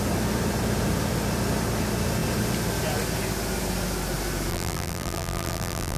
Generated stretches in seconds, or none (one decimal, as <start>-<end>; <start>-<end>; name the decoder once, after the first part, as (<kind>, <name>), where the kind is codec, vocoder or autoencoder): 4.5-6.0 (vocoder, BigVGAN v2)